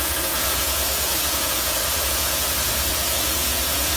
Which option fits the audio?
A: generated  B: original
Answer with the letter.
A